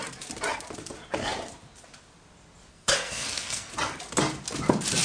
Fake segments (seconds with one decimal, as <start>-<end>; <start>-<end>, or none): 2.7-3.7